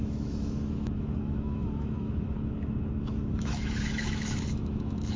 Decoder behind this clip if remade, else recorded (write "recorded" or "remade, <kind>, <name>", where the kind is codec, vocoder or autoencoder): remade, autoencoder, DAC-VAE